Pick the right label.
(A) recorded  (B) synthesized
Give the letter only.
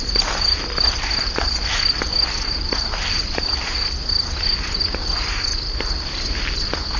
A